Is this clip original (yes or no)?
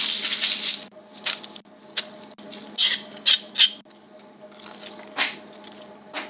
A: yes